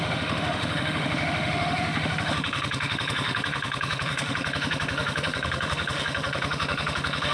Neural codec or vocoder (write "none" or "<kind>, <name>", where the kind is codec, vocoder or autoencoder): autoencoder, DAC-VAE